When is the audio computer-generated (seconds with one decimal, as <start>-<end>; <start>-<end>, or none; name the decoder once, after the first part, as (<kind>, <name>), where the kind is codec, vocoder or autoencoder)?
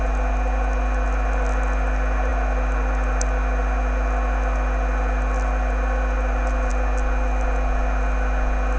none